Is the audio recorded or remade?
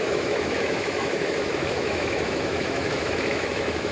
remade